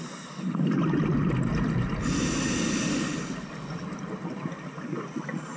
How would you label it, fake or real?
real